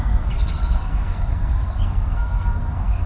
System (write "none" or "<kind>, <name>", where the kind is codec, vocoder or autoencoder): codec, SNAC